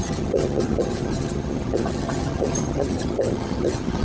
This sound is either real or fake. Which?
fake